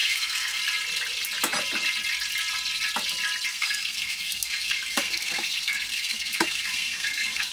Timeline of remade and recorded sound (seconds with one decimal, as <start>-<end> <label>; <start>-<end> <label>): 0.0-0.6 remade; 0.6-3.5 recorded; 3.5-7.5 remade